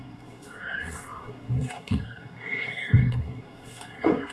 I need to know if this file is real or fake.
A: fake